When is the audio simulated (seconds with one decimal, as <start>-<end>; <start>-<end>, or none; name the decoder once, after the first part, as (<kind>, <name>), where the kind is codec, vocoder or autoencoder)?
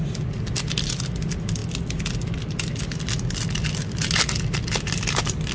none